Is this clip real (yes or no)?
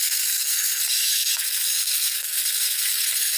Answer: no